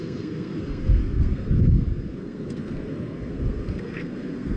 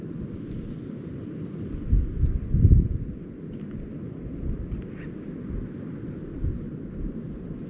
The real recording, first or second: second